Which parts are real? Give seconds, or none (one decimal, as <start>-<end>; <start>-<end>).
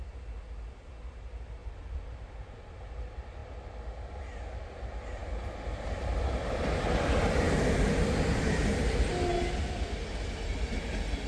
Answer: 0.0-11.3